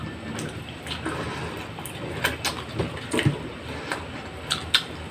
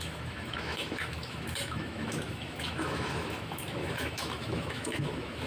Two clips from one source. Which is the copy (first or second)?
second